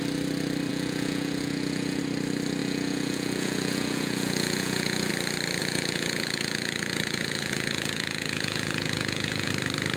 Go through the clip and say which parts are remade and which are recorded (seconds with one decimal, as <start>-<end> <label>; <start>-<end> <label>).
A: 0.0-0.7 recorded; 0.7-2.0 remade; 2.0-2.6 recorded; 2.6-5.1 remade; 5.1-5.6 recorded; 5.6-9.5 remade; 9.5-10.0 recorded